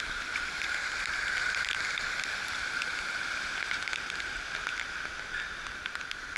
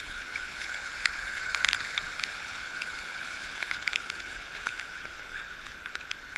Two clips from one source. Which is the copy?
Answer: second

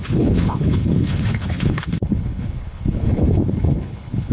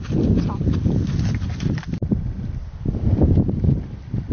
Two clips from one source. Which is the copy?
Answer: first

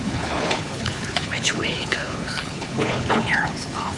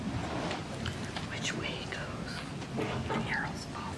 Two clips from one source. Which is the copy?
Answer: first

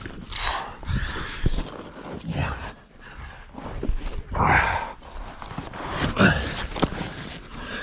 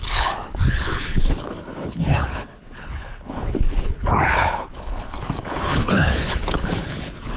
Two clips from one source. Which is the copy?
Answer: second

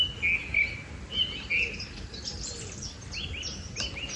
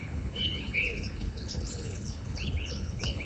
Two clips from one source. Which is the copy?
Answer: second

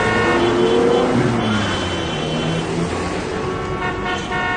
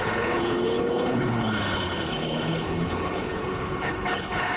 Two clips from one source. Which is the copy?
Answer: second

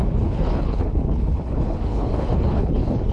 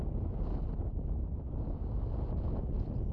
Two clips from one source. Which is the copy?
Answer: first